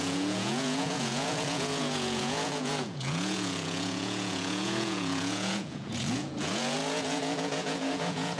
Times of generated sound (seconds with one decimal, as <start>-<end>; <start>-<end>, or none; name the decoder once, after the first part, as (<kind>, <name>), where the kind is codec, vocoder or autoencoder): 0.0-8.4 (vocoder, Vocos)